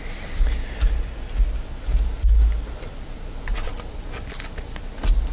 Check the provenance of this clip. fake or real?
real